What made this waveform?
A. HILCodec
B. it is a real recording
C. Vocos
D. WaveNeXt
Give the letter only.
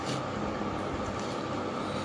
B